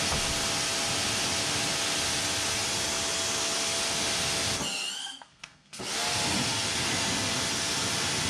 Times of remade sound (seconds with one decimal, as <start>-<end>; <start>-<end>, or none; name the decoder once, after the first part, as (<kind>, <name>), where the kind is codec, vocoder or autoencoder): 5.0-5.8 (codec, SNAC)